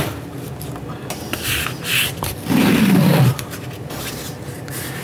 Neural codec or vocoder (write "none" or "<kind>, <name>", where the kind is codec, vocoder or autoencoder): vocoder, BigVGAN v2